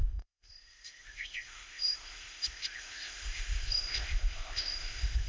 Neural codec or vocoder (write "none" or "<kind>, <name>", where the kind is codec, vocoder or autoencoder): codec, ZipCodec